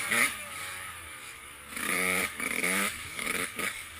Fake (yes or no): yes